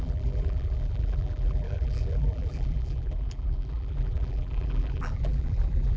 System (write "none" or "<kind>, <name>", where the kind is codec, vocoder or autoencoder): vocoder, BigVGAN v2